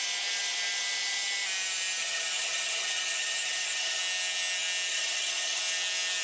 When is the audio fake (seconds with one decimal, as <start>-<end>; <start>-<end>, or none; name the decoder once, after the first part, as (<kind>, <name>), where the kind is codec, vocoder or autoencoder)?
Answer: 2.0-4.0 (vocoder, HiFi-GAN); 4.9-5.6